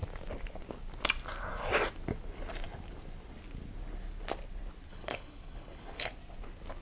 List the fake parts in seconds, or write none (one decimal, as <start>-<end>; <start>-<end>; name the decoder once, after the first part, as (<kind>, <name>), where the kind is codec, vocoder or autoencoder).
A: 4.9-6.1 (codec, HILCodec)